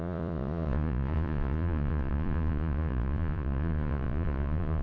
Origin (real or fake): fake